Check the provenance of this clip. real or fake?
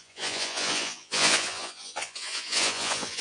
fake